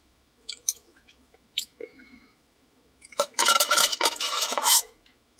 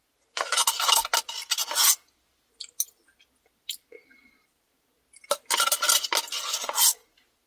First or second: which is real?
second